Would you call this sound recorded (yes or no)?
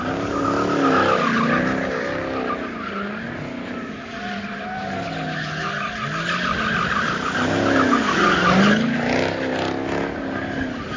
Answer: yes